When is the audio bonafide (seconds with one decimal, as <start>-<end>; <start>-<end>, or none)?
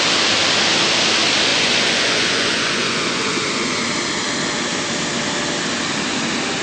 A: 0.0-1.5; 3.8-6.6